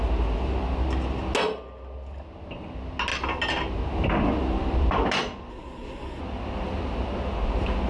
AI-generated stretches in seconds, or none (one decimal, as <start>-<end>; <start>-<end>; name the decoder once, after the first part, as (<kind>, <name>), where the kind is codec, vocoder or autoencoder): 5.5-6.2 (codec, SNAC)